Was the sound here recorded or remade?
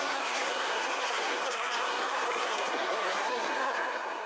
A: remade